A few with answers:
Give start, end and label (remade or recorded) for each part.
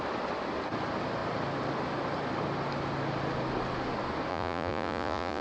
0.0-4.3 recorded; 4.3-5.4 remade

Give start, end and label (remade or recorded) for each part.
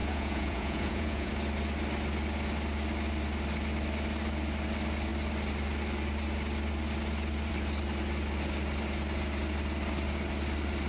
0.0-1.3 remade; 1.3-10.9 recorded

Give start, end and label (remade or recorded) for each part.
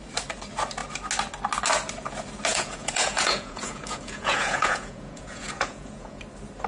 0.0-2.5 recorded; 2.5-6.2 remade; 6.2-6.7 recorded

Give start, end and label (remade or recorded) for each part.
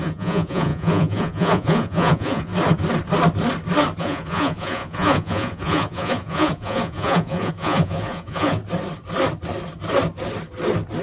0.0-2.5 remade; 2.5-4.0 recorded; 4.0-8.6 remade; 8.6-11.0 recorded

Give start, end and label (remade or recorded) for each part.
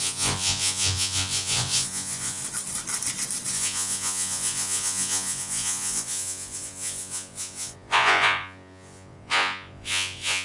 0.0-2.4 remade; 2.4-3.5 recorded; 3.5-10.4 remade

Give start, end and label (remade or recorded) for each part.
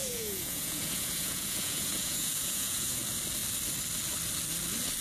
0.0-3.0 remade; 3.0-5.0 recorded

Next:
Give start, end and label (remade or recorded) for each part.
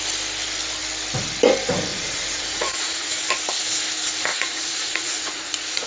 0.0-1.9 recorded; 1.9-3.1 remade; 3.1-4.3 recorded; 4.3-5.9 remade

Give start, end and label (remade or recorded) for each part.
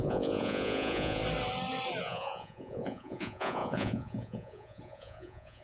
0.0-1.2 remade; 1.2-2.0 recorded; 2.0-5.6 remade